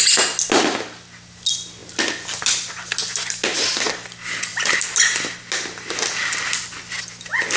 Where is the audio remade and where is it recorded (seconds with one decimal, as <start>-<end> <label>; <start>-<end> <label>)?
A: 0.0-7.6 recorded